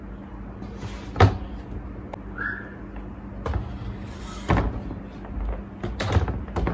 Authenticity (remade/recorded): recorded